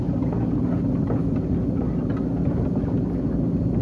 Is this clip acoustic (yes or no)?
yes